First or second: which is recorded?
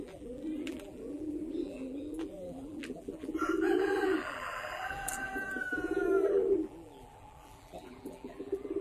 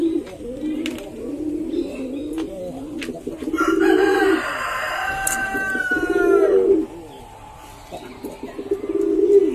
second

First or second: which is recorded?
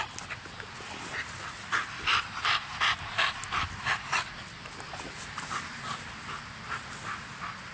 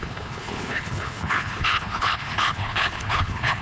first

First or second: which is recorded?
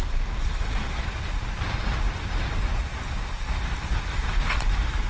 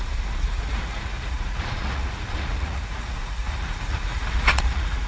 first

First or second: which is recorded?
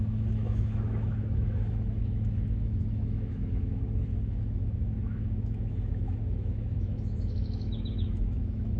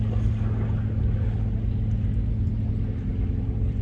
second